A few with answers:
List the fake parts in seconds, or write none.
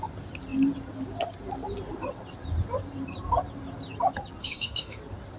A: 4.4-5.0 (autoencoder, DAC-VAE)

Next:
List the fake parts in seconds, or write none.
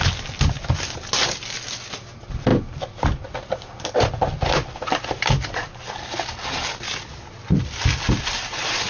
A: none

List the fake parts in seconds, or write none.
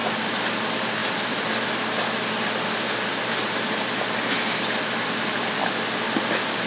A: none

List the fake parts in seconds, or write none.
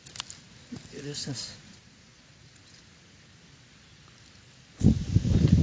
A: 0.9-2.6 (vocoder, Vocos)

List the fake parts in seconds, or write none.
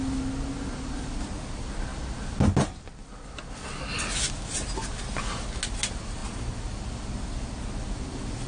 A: none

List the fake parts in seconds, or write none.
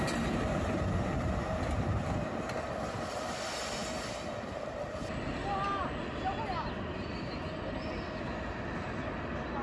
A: none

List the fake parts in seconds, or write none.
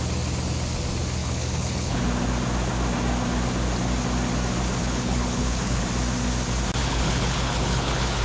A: 1.2-2.0 (codec, HILCodec); 4.8-5.8; 6.8-8.2